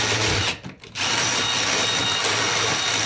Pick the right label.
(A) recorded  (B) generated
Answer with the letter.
A